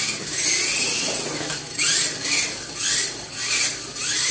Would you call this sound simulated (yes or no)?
no